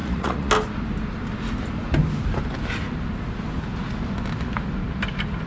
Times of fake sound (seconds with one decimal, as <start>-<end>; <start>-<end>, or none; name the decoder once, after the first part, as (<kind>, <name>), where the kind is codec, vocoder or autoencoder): 0.0-0.5 (vocoder, Vocos)